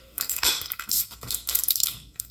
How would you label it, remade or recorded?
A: remade